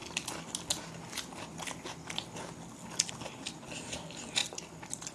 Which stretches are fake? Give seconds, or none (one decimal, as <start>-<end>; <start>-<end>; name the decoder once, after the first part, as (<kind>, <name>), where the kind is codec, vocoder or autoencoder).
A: none